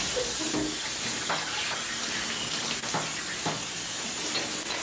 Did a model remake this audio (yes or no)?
no